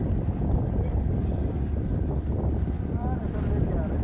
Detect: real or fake fake